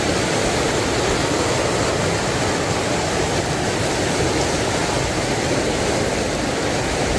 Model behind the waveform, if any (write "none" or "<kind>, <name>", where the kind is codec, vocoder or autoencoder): none